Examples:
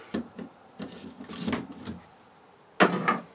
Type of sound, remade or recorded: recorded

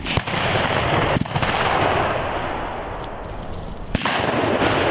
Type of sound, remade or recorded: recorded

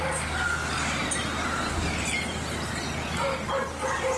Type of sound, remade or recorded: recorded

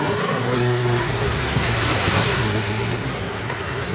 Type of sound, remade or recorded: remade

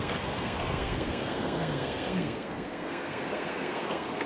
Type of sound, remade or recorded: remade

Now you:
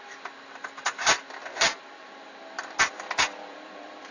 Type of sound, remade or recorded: recorded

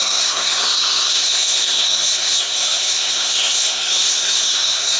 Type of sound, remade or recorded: remade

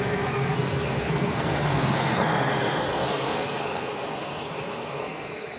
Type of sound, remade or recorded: remade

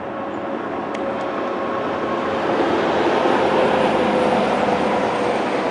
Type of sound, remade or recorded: recorded